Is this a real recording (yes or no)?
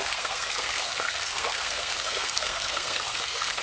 no